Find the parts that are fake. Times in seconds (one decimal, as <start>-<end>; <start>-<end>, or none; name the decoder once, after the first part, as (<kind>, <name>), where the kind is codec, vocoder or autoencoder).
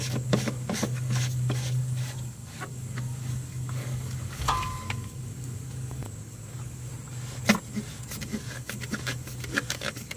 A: 0.0-6.9 (codec, DAC); 8.2-10.2